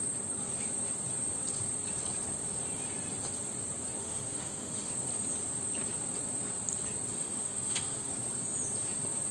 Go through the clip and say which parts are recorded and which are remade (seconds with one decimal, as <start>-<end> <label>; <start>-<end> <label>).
0.0-4.0 recorded; 4.0-4.9 remade; 4.9-7.1 recorded; 7.1-8.1 remade; 8.1-9.3 recorded